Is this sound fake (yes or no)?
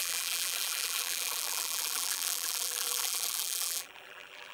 yes